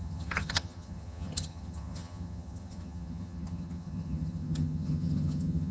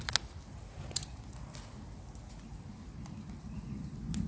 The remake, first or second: first